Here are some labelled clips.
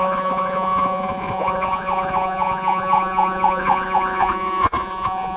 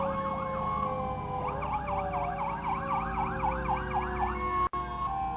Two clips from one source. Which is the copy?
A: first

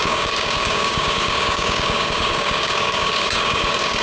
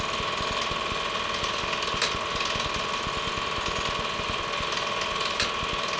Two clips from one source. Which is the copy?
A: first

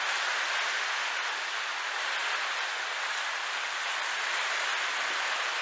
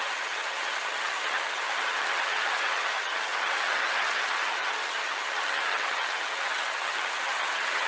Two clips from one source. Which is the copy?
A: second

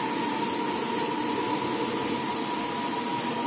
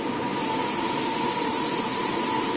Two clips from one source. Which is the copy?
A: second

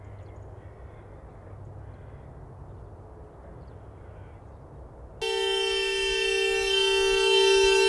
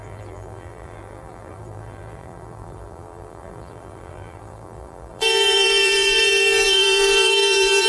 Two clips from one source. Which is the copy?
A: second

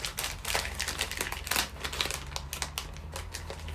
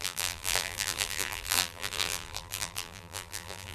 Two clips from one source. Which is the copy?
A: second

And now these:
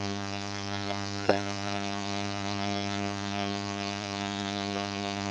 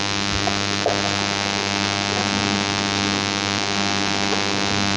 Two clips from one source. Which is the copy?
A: first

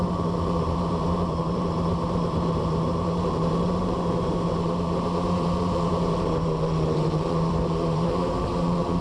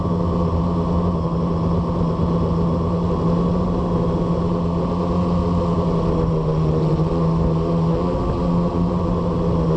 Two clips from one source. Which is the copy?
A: first